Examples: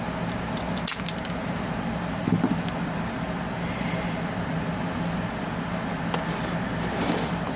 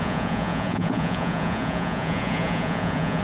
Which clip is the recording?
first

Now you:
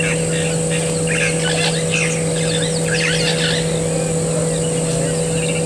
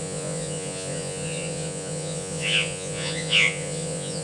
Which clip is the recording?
first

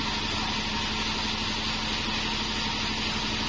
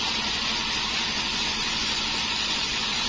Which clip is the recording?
first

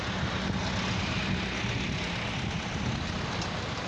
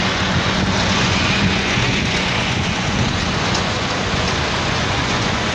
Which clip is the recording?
first